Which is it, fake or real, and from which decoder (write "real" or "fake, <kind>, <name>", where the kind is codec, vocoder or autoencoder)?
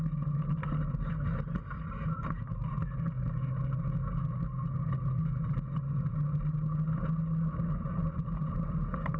real